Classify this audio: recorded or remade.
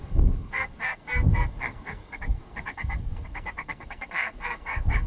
remade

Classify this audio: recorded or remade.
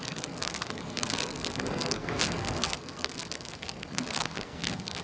remade